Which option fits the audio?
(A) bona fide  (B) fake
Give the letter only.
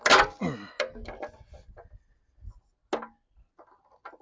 A